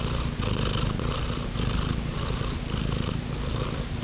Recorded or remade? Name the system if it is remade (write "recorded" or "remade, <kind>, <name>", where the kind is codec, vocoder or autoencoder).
recorded